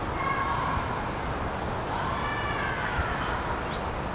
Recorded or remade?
recorded